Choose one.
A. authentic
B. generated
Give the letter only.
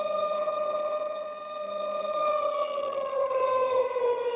B